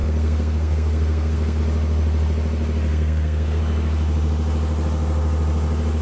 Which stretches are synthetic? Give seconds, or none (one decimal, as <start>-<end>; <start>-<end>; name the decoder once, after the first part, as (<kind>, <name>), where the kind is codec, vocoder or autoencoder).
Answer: 0.0-1.6 (codec, SNAC); 2.9-3.6